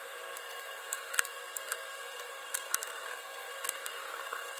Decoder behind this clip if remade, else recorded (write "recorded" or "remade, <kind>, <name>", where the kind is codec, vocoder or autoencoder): remade, codec, SNAC